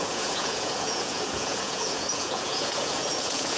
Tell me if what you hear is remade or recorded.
remade